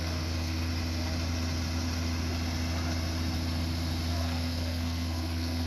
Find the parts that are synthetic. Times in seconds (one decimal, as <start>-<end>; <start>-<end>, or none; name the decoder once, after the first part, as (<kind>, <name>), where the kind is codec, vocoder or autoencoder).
0.0-0.7 (codec, SNAC); 4.1-5.7